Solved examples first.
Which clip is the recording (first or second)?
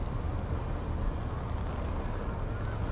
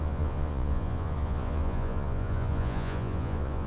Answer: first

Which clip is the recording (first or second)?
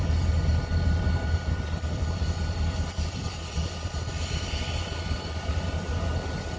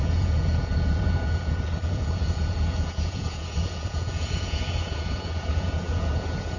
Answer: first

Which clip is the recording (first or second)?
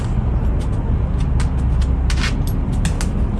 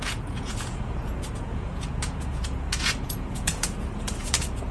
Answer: first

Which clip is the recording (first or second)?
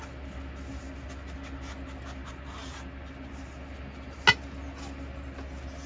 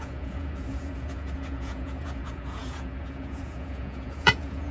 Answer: first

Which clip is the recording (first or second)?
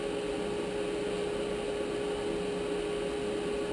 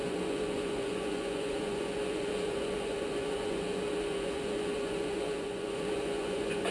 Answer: first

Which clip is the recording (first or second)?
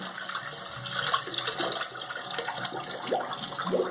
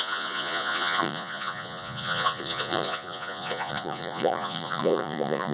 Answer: first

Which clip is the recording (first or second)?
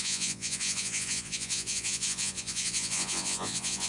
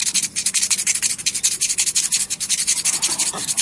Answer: second